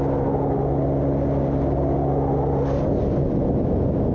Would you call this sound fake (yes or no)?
no